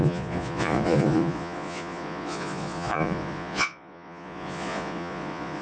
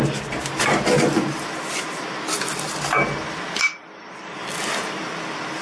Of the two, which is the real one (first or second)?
second